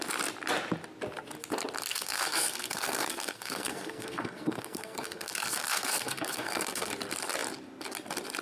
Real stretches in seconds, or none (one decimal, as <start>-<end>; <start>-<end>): 0.0-1.9; 6.9-8.4